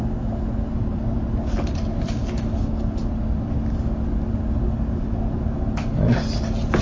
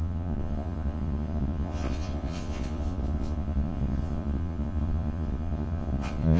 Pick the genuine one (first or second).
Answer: first